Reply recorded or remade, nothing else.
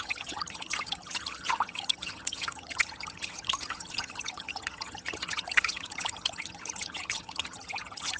remade